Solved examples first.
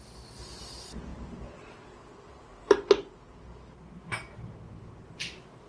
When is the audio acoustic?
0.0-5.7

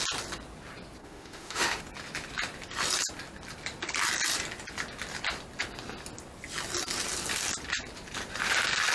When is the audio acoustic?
0.0-1.0; 1.8-8.9